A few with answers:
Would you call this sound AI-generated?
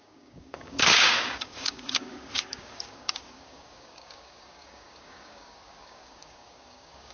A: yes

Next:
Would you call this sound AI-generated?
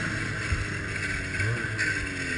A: no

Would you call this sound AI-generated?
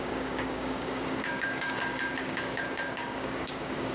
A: yes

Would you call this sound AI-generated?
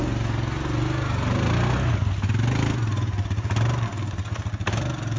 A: no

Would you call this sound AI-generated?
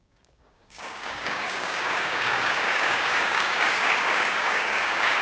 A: yes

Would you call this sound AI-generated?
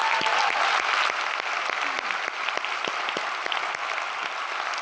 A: no